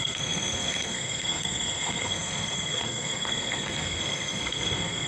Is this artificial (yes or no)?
yes